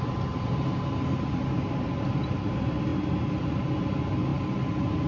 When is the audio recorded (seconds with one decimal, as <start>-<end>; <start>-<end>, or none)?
0.0-5.1